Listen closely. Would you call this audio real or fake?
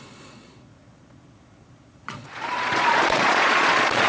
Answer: fake